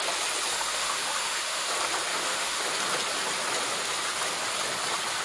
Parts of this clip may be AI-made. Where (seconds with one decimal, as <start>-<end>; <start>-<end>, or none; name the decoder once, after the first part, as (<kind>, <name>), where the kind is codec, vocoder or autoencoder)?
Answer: 0.5-1.7 (autoencoder, DAC-VAE); 2.1-2.6